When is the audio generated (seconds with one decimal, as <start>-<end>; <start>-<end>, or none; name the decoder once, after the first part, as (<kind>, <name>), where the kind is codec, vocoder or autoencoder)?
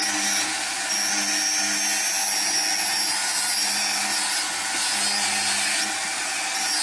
none